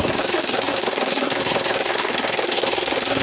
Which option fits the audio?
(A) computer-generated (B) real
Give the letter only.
A